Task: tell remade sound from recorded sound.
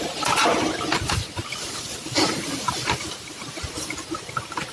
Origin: recorded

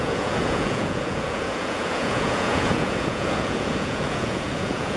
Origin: remade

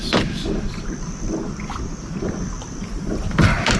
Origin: recorded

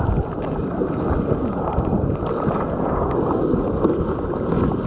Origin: recorded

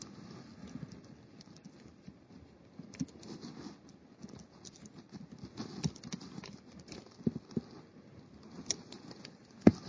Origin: recorded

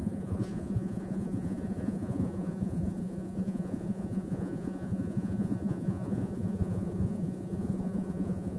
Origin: remade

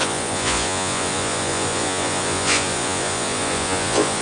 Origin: remade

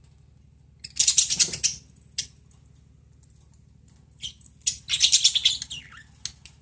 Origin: recorded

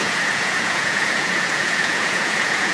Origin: remade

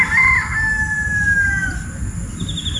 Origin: recorded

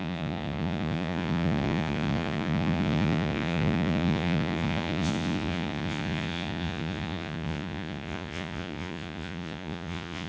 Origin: remade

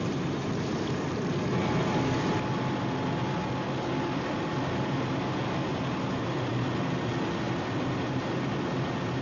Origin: recorded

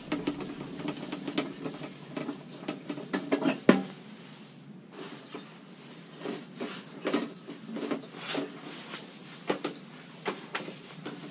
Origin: recorded